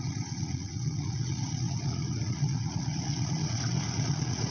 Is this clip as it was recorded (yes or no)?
no